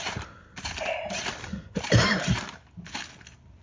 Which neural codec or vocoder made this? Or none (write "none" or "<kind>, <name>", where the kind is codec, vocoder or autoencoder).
none